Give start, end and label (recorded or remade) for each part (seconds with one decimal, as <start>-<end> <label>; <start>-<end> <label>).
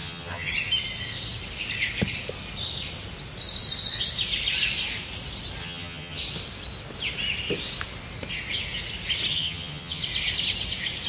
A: 0.0-0.5 remade; 0.5-5.6 recorded; 5.6-6.2 remade; 6.2-9.3 recorded; 9.3-10.0 remade; 10.0-11.1 recorded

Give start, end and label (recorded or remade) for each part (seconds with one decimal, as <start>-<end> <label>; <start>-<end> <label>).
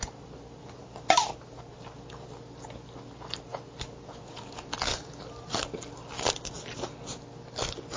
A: 0.0-8.0 recorded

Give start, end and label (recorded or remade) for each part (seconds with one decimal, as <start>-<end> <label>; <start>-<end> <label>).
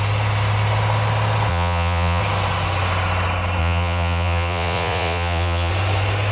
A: 0.0-1.5 recorded; 1.5-2.2 remade; 2.2-3.6 recorded; 3.6-5.7 remade; 5.7-6.3 recorded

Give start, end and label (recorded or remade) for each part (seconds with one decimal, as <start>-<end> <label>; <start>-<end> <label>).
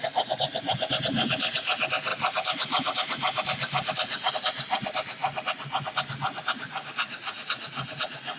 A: 0.0-0.5 recorded; 0.5-1.0 remade; 1.0-2.1 recorded; 2.1-4.3 remade; 4.3-7.0 recorded; 7.0-8.4 remade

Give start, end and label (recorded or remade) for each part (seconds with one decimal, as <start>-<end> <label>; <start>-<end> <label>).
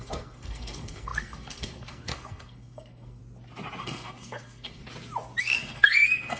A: 0.0-3.2 remade; 3.2-3.8 recorded; 3.8-4.8 remade; 4.8-5.4 recorded; 5.4-6.4 remade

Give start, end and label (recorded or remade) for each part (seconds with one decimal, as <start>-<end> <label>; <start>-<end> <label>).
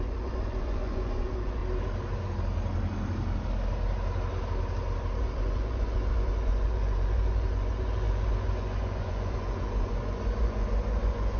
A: 0.0-1.6 remade; 1.6-5.2 recorded; 5.2-11.4 remade